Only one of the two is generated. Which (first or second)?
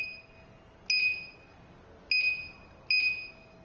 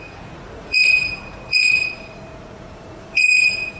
second